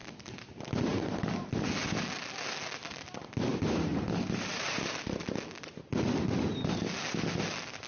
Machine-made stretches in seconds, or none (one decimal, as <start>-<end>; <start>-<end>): 0.0-0.5; 3.5-5.8